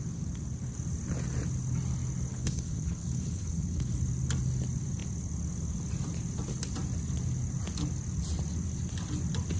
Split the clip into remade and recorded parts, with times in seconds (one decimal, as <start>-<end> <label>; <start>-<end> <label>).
0.0-2.3 recorded; 2.3-3.9 remade; 3.9-9.6 recorded